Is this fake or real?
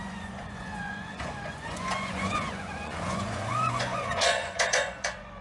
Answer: fake